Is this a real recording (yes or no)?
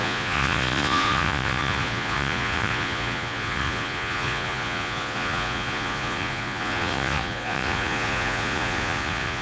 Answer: no